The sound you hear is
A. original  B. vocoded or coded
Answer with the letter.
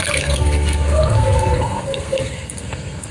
B